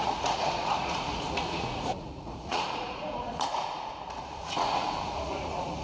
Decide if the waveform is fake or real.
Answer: fake